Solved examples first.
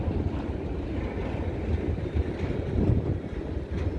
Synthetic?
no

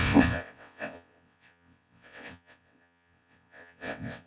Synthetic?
yes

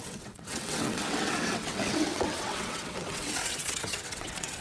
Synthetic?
yes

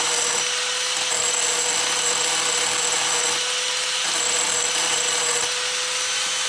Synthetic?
no